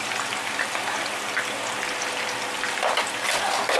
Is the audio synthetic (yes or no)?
no